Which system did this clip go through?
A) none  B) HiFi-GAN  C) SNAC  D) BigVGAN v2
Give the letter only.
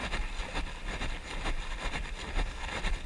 A